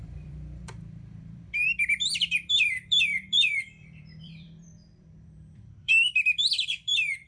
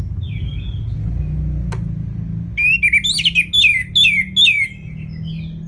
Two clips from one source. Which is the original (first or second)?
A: second